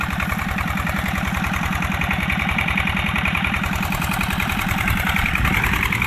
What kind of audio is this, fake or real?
fake